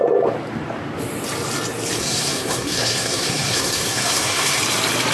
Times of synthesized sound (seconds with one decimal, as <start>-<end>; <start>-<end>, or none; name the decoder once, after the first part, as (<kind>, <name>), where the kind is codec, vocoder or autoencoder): 2.0-4.6 (codec, SNAC)